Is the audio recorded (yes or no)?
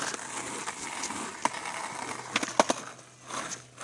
yes